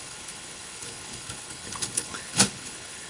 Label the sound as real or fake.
fake